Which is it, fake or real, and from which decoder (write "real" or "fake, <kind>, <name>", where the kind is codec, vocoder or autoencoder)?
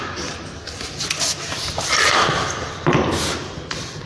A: real